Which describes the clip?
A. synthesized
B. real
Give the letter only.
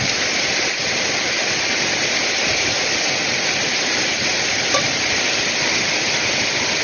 B